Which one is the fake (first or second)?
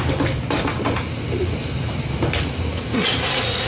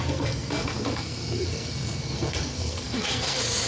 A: second